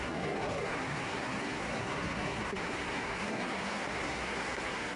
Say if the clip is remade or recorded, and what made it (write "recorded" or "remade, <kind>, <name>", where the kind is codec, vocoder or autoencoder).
remade, codec, SNAC